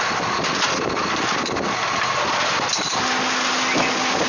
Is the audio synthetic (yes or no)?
no